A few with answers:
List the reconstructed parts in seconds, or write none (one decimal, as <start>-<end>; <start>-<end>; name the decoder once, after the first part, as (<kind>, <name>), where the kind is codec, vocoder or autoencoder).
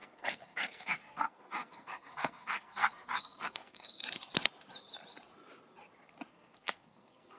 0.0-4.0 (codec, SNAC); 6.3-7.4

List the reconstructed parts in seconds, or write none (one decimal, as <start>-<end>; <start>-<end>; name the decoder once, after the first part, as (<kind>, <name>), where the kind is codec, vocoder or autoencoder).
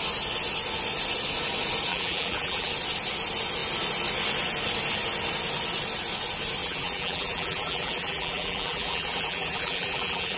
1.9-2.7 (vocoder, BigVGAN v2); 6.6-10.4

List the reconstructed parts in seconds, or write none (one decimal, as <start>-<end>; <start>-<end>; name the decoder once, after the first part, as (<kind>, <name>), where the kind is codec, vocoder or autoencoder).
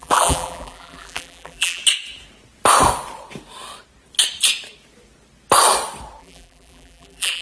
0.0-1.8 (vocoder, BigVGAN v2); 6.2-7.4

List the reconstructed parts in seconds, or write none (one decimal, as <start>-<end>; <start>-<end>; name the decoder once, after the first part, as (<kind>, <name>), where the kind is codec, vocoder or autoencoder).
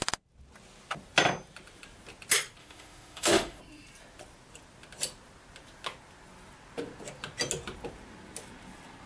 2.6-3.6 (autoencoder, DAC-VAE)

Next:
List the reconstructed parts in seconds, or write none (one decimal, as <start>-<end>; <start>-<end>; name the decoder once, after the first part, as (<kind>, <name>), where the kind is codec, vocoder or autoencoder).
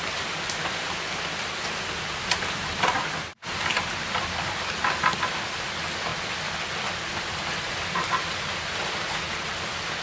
none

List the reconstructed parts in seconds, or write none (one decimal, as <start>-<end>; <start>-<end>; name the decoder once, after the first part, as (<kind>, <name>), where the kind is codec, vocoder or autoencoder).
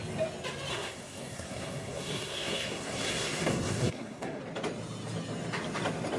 0.7-4.4 (codec, SNAC)